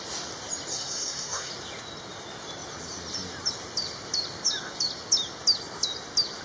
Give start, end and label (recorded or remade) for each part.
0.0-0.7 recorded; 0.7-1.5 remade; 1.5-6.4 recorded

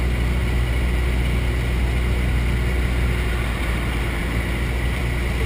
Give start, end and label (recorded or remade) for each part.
0.0-5.5 recorded

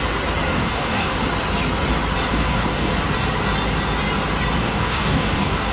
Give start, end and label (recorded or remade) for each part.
0.0-0.6 recorded; 0.6-1.2 remade; 1.2-2.3 recorded; 2.3-2.9 remade; 2.9-4.6 recorded; 4.6-5.7 remade

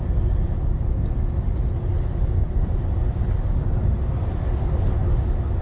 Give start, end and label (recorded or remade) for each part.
0.0-1.9 recorded; 1.9-5.0 remade; 5.0-5.6 recorded

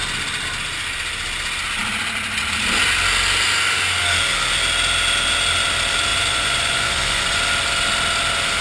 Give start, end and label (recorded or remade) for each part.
0.0-6.1 recorded; 6.1-7.4 remade; 7.4-8.6 recorded

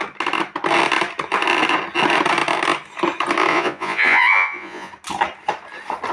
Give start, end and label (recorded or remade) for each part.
0.0-3.5 recorded; 3.5-4.9 remade; 4.9-6.1 recorded

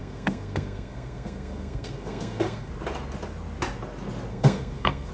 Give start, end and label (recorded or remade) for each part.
0.0-2.7 remade; 2.7-4.3 recorded; 4.3-5.1 remade